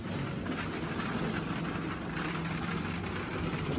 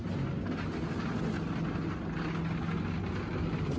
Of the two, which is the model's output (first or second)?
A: first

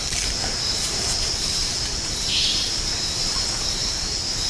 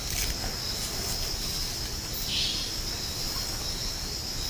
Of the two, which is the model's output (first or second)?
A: first